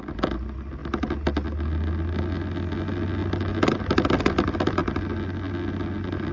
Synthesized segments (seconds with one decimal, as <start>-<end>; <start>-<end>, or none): none